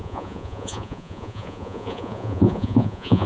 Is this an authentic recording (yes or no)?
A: no